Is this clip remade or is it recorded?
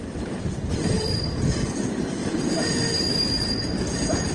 remade